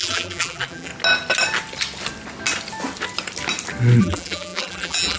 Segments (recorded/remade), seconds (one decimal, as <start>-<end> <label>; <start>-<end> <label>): 0.0-0.9 remade; 0.9-4.0 recorded; 4.0-5.2 remade